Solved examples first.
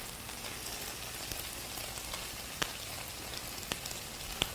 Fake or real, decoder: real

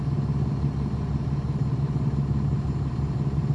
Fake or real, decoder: real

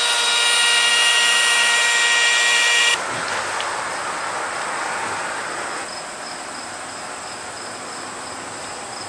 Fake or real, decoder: real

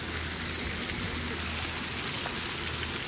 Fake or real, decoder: real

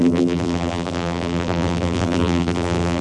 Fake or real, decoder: fake, vocoder, BigVGAN v2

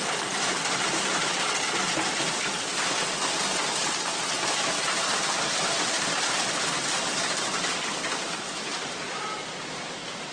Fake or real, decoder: fake, vocoder, BigVGAN v2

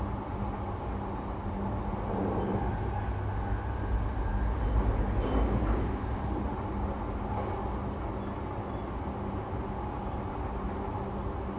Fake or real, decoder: real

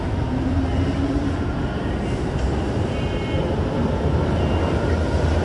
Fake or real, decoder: real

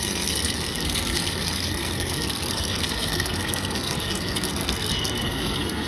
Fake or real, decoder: fake, codec, SNAC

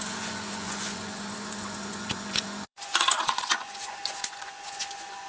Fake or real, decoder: fake, vocoder, Vocos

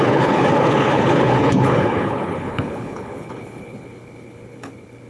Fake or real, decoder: fake, codec, HILCodec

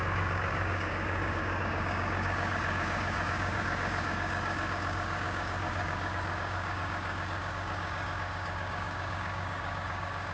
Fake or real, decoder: fake, codec, DAC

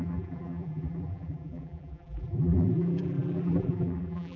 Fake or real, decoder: fake, vocoder, BigVGAN v2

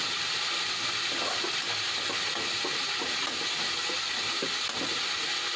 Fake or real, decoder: real